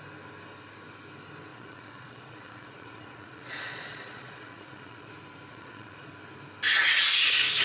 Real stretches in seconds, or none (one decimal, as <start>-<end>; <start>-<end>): 0.0-1.5; 5.1-5.5; 6.1-7.6